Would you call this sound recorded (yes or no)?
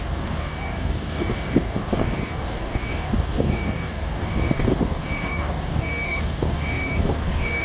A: no